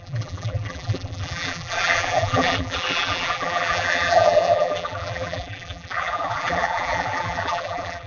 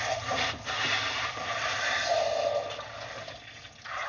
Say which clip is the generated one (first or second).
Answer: first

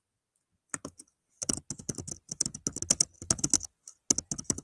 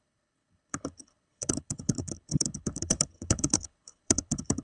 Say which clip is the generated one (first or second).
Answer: second